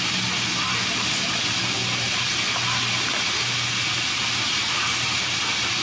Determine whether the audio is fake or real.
real